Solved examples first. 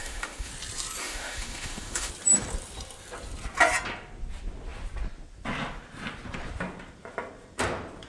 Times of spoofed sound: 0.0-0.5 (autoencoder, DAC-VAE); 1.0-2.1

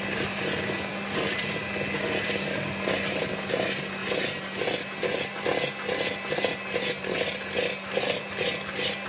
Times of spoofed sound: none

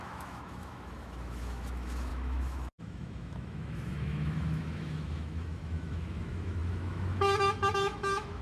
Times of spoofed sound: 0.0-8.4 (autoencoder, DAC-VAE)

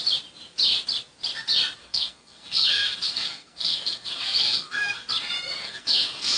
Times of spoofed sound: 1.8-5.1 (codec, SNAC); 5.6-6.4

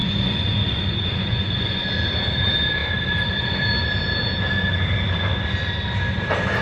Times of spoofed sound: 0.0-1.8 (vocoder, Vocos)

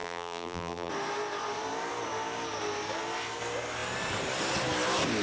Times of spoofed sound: 0.0-0.9 (vocoder, BigVGAN v2)